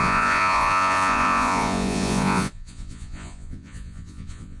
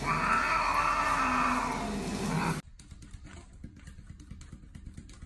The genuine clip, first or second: second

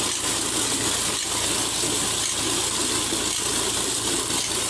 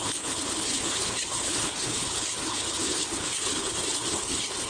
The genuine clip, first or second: first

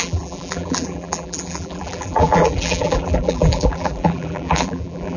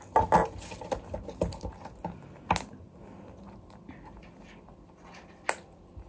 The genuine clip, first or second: second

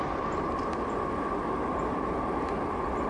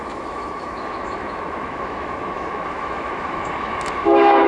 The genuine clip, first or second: first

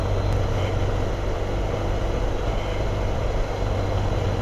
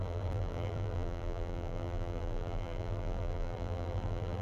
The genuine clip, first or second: first